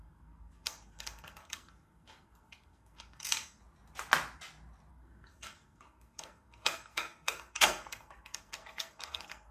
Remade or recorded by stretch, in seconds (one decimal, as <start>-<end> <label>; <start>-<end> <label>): 0.0-3.6 remade; 3.6-4.9 recorded; 4.9-9.5 remade